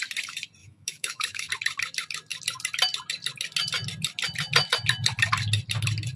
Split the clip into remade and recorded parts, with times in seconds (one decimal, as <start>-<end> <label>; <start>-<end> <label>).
0.0-0.6 recorded; 0.6-1.5 remade; 1.5-6.2 recorded